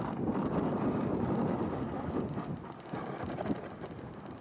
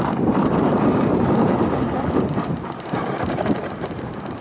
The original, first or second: first